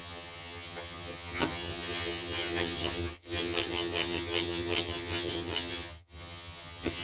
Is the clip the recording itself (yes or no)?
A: no